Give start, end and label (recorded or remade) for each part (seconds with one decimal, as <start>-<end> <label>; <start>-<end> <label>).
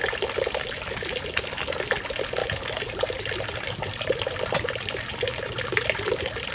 0.0-6.5 recorded